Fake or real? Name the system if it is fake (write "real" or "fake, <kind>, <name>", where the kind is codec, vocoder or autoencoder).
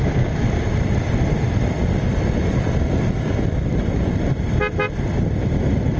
real